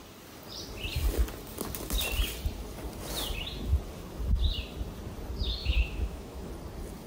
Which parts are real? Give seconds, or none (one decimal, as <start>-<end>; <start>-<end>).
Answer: 0.0-5.6; 6.5-7.1